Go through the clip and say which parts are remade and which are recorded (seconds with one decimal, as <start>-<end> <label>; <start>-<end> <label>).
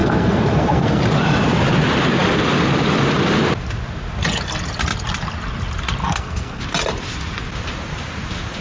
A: 0.0-1.0 remade; 1.0-6.0 recorded; 6.0-6.6 remade; 6.6-8.6 recorded